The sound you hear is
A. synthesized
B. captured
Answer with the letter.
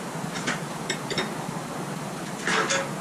B